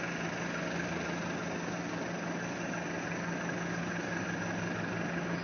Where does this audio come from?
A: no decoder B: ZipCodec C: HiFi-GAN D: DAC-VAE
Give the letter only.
A